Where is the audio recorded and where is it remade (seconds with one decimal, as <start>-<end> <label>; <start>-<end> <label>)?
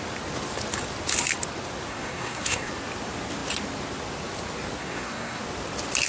0.0-1.9 recorded; 1.9-2.7 remade; 2.7-4.8 recorded; 4.8-5.4 remade; 5.4-6.1 recorded